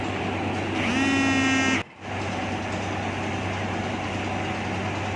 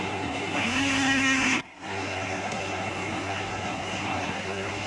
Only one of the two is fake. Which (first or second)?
second